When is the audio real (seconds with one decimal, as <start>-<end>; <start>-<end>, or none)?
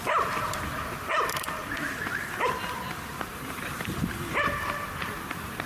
0.0-3.3; 4.3-5.7